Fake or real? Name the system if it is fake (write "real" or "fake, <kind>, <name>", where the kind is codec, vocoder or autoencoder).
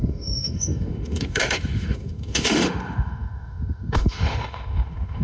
fake, autoencoder, DAC-VAE